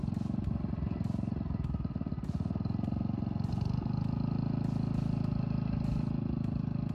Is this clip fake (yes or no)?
no